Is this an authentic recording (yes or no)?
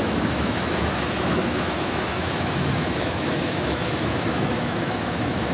no